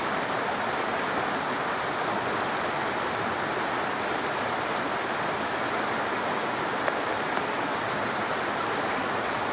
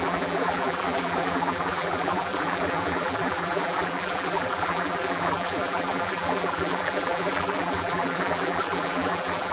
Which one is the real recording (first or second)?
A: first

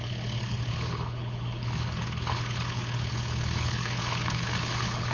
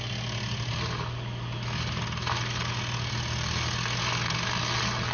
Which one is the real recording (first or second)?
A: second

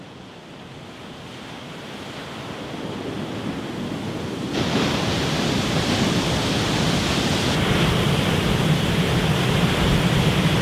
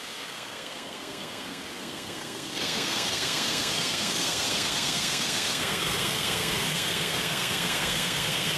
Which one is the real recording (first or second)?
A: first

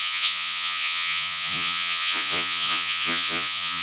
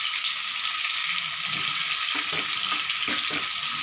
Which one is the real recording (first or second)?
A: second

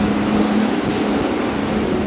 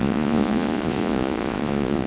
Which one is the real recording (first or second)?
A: first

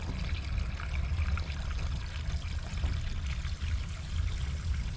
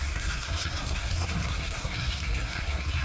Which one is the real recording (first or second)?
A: first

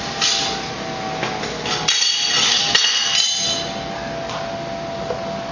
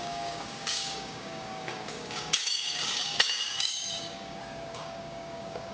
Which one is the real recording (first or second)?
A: first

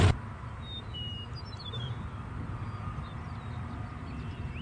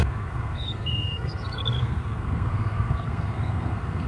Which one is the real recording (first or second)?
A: first